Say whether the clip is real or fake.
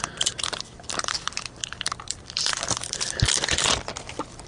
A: fake